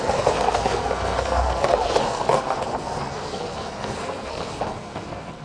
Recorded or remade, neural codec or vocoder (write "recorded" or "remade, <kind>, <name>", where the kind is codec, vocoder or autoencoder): remade, codec, SNAC